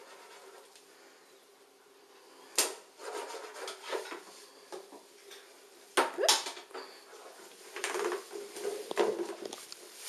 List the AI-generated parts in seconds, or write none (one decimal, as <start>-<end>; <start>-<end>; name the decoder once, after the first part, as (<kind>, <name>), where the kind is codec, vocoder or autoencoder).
none